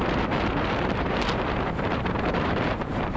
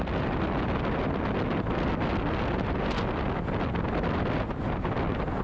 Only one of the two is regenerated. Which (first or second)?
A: first